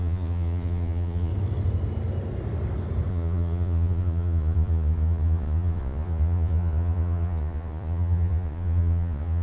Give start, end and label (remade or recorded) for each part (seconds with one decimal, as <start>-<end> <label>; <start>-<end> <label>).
0.0-1.3 remade; 1.3-3.1 recorded; 3.1-9.4 remade